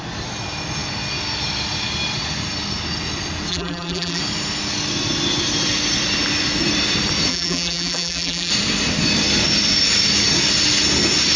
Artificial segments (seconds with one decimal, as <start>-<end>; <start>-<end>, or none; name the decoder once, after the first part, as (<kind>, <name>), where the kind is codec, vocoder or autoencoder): 3.5-4.2 (vocoder, BigVGAN v2); 7.3-8.5